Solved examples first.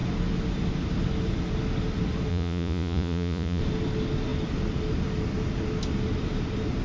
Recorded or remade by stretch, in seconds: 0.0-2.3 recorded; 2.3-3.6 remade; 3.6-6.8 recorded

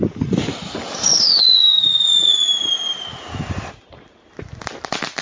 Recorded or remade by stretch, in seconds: 0.0-1.1 recorded; 1.1-2.5 remade; 2.5-5.2 recorded